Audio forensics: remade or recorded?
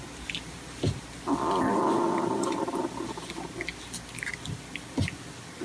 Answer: recorded